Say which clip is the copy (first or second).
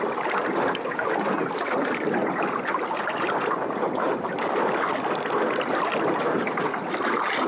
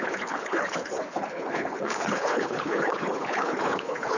second